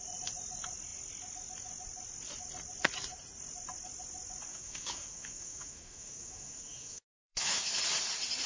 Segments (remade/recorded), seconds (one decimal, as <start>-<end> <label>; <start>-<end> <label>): 0.0-4.5 recorded; 4.5-7.8 remade; 7.8-8.5 recorded